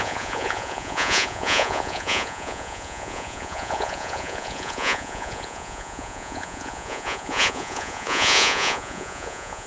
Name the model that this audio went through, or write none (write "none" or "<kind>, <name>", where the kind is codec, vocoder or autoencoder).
vocoder, Vocos